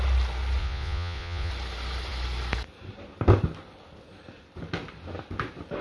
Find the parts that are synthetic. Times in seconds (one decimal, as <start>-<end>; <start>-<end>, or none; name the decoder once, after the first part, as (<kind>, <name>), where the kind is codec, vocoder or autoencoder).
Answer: 0.6-1.5 (vocoder, Vocos)